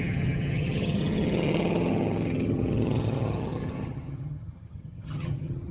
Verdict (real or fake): fake